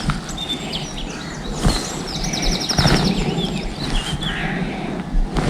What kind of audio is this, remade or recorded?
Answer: recorded